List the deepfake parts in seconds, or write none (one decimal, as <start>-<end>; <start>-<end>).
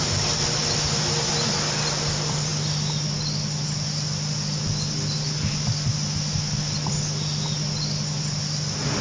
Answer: none